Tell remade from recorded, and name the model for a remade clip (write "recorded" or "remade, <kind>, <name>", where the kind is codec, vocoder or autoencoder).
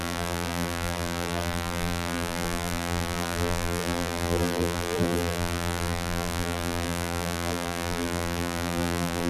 remade, vocoder, BigVGAN v2